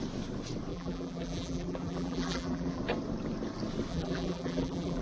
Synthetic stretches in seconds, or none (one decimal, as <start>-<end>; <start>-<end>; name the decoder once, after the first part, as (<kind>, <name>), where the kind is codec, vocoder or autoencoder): 0.7-2.8 (vocoder, BigVGAN v2); 3.9-5.0